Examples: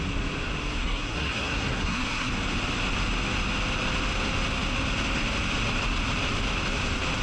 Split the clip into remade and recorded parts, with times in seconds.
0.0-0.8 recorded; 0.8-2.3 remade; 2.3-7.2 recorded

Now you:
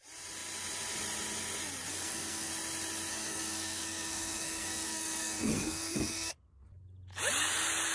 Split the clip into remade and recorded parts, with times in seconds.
0.0-1.9 recorded; 1.9-2.5 remade; 2.5-3.1 recorded; 3.1-6.3 remade; 6.3-7.9 recorded

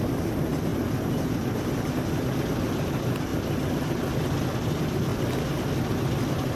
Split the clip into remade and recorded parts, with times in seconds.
0.0-6.6 recorded